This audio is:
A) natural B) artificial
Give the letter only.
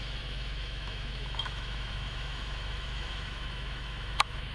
B